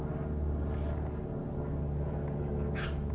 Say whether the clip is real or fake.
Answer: real